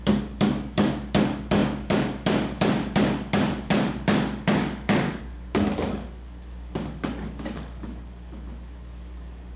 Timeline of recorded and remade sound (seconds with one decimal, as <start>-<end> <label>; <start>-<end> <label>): 0.0-9.6 remade